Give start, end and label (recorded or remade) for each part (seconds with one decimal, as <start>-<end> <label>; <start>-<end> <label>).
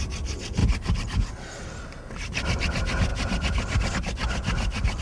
0.0-5.0 recorded